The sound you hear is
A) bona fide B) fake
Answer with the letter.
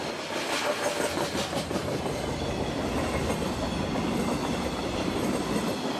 A